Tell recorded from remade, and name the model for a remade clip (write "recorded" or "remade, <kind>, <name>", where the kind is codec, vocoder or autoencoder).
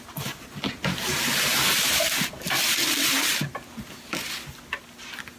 recorded